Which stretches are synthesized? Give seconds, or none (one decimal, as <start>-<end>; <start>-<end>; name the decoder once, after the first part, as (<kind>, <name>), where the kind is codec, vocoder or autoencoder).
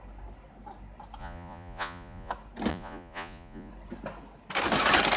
1.2-2.3 (vocoder, Vocos); 2.7-3.7